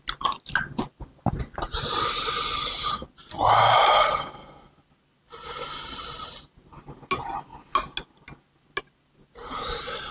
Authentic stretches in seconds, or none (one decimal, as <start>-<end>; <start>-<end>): 0.0-10.1